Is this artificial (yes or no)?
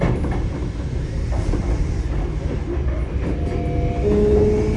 no